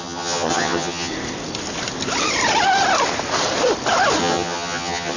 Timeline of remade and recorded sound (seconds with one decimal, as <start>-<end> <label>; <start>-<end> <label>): 0.0-1.1 remade; 1.1-4.2 recorded; 4.2-5.2 remade